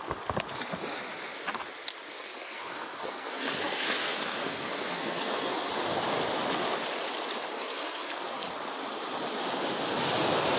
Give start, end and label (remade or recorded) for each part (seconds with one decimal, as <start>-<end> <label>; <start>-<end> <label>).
0.0-2.1 recorded; 2.1-5.7 remade; 5.7-7.5 recorded; 7.5-8.5 remade; 8.5-10.6 recorded